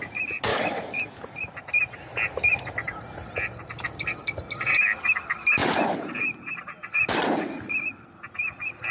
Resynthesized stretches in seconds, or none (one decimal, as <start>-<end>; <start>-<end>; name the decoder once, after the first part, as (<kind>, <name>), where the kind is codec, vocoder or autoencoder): 0.5-1.2 (codec, DAC)